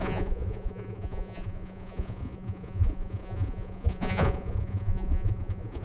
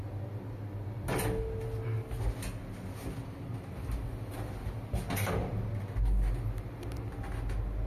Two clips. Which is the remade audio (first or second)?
first